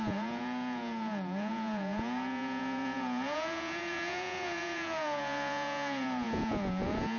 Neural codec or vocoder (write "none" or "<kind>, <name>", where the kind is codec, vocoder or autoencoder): vocoder, Vocos